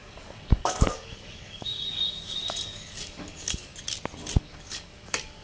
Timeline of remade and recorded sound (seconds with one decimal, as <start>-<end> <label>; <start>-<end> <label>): 0.0-3.7 remade; 3.7-4.4 recorded; 4.4-5.4 remade